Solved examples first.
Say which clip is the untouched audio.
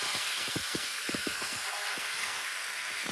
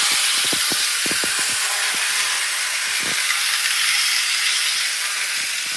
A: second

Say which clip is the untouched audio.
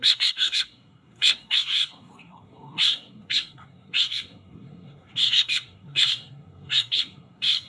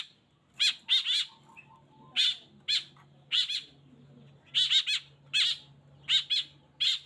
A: second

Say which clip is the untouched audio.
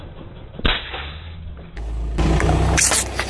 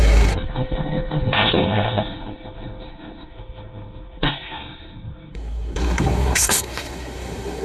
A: first